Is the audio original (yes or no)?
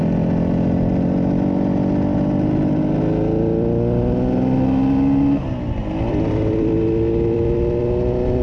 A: yes